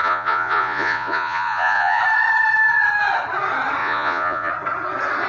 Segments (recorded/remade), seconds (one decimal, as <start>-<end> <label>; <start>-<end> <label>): 0.0-2.0 remade; 2.0-3.8 recorded; 3.8-4.5 remade; 4.5-5.3 recorded